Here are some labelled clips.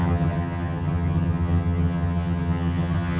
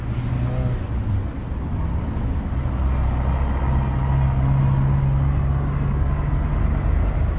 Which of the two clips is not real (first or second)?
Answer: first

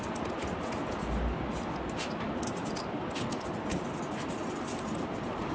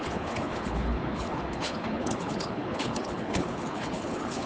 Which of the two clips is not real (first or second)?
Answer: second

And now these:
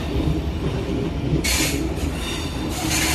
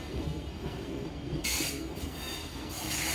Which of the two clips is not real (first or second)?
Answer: second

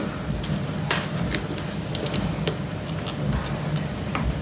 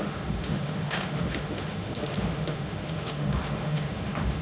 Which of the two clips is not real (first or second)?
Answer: second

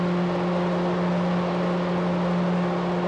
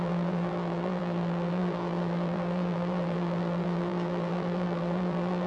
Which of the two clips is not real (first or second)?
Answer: second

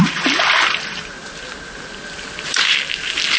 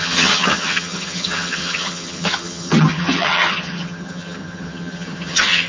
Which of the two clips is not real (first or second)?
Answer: second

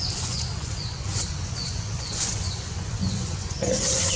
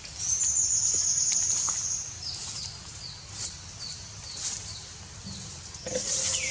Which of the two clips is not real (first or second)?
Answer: first